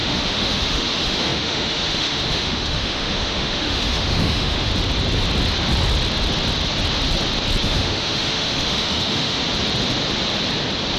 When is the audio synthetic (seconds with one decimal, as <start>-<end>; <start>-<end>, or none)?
0.0-4.7; 7.6-9.4